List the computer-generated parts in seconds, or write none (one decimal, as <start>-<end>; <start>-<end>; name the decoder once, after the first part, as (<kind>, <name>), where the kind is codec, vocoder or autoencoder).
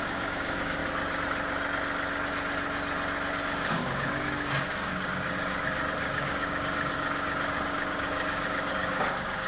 0.0-0.8 (codec, DAC); 3.4-9.5